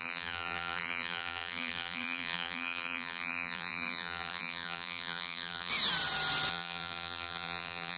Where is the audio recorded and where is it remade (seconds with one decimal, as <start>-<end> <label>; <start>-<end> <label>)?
0.0-5.7 remade; 5.7-6.5 recorded; 6.5-8.0 remade